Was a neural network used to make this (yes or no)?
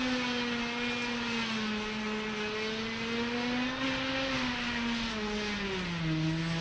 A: no